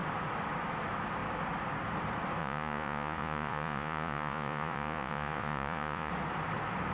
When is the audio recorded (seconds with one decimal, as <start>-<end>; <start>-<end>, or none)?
0.0-2.4; 6.1-6.9